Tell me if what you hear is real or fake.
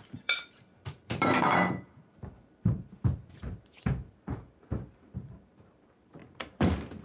fake